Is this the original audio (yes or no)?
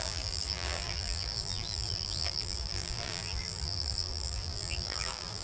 no